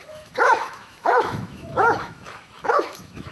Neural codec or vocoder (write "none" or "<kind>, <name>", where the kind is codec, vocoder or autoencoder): autoencoder, DAC-VAE